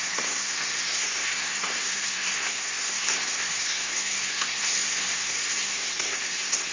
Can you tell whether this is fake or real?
fake